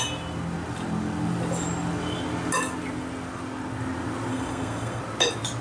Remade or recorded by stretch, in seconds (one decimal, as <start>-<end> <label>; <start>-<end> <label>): 0.0-4.3 recorded; 4.3-5.0 remade; 5.0-5.6 recorded